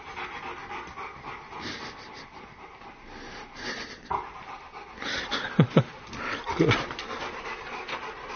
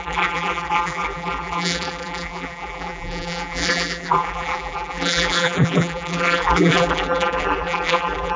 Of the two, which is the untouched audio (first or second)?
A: first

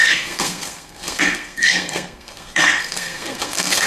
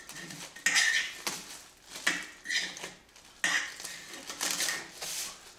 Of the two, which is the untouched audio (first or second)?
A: second